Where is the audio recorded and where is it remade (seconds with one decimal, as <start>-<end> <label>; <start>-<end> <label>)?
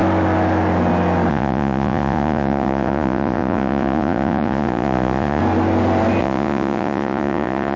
0.0-1.3 recorded; 1.3-5.4 remade; 5.4-6.2 recorded; 6.2-7.8 remade